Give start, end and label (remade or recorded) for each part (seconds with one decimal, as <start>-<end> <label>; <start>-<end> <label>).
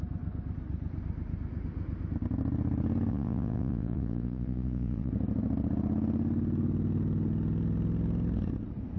0.0-3.1 recorded; 3.1-5.1 remade; 5.1-9.0 recorded